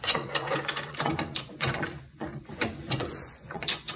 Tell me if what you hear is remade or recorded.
remade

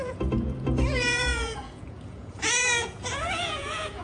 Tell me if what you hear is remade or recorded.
remade